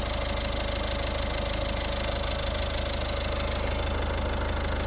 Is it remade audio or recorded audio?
recorded